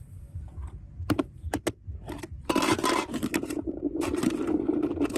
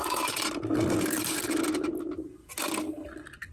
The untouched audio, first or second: second